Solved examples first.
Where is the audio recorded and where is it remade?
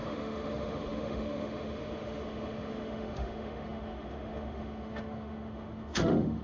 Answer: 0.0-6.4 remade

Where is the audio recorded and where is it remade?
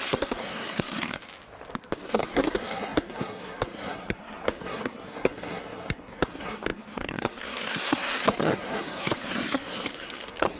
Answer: 0.0-1.2 remade; 1.2-2.0 recorded; 2.0-10.6 remade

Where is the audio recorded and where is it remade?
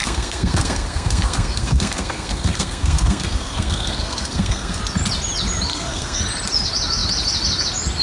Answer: 0.0-4.8 remade; 4.8-5.7 recorded; 5.7-6.2 remade; 6.2-8.0 recorded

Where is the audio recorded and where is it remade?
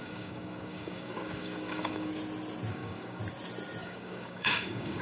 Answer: 0.0-2.1 remade; 2.1-2.7 recorded; 2.7-3.2 remade; 3.2-3.8 recorded; 3.8-5.0 remade